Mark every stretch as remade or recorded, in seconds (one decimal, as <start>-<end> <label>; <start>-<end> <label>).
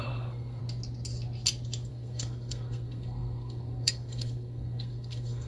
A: 0.0-0.6 remade; 0.6-1.9 recorded; 1.9-5.5 remade